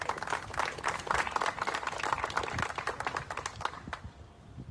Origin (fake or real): real